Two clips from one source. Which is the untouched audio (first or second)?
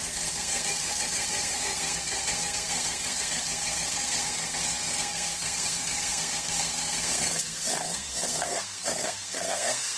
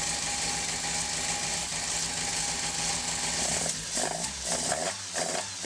second